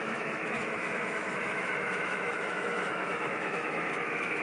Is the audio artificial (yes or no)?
yes